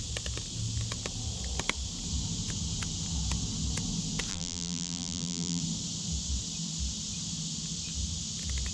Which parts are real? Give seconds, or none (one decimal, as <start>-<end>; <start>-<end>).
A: 0.0-4.3; 5.6-8.7